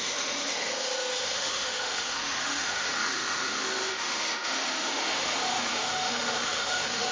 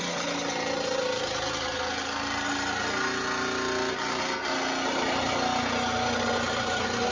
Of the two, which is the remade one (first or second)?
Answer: first